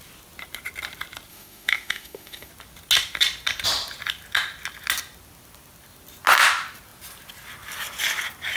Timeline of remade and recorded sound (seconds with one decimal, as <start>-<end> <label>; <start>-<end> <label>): 0.0-1.3 recorded; 1.3-2.5 remade; 2.5-8.6 recorded